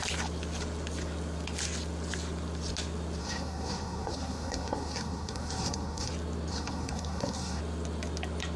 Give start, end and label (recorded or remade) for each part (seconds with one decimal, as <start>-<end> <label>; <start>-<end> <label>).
0.0-3.2 recorded; 3.2-6.1 remade; 6.1-6.5 recorded; 6.5-7.6 remade; 7.6-8.6 recorded